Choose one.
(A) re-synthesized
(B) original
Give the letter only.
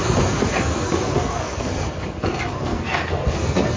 A